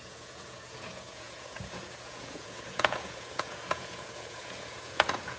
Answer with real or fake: fake